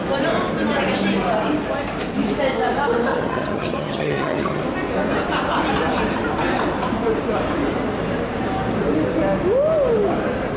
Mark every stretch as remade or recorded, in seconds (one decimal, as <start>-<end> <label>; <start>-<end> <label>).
0.0-3.1 recorded; 3.1-4.6 remade; 4.6-10.6 recorded

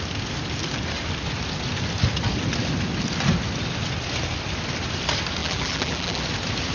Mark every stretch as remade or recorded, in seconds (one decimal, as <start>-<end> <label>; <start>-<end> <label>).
0.0-5.4 recorded; 5.4-6.2 remade; 6.2-6.7 recorded

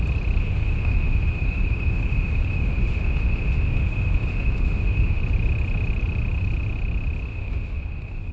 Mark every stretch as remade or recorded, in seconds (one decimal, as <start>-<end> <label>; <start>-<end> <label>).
0.0-0.4 recorded; 0.4-5.2 remade; 5.2-7.3 recorded; 7.3-8.3 remade

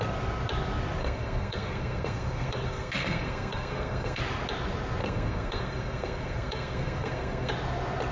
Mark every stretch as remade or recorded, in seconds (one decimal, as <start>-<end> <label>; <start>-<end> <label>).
0.0-1.0 recorded; 1.0-4.2 remade; 4.2-5.0 recorded; 5.0-7.5 remade; 7.5-8.1 recorded

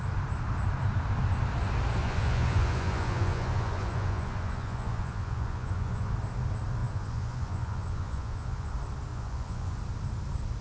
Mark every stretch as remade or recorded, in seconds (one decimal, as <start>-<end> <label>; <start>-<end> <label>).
0.0-2.0 recorded; 2.0-6.1 remade; 6.1-6.8 recorded; 6.8-8.7 remade; 8.7-9.1 recorded; 9.1-9.8 remade; 9.8-10.6 recorded

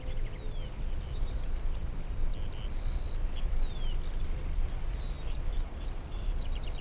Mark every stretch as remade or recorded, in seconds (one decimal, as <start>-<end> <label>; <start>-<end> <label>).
0.0-6.8 recorded

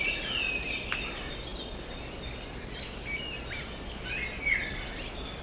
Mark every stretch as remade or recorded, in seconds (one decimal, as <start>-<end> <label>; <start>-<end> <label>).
0.0-5.4 recorded